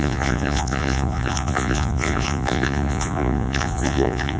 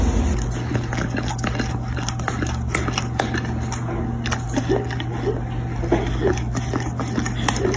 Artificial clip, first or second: first